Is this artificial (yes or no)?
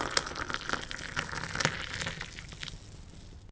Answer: no